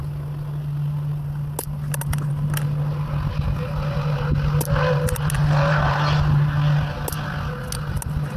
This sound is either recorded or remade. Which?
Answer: recorded